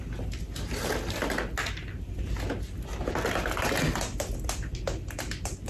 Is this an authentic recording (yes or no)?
yes